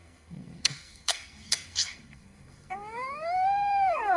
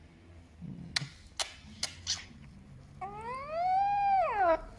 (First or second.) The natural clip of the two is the second